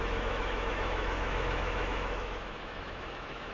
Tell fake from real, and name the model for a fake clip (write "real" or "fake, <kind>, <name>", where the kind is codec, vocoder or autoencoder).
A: fake, autoencoder, DAC-VAE